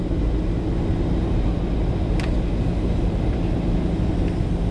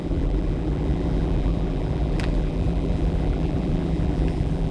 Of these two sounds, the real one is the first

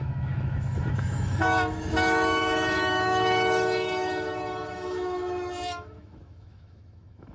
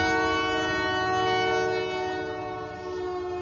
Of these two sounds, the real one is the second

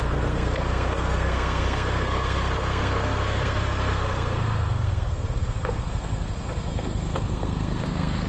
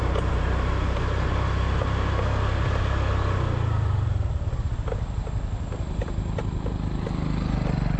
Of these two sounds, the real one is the second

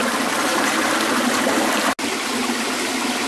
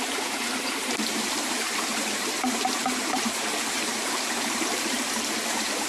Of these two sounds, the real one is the first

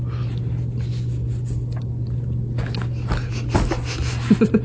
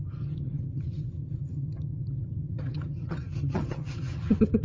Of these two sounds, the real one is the first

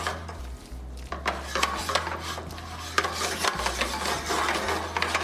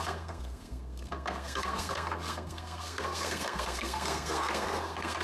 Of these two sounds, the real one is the first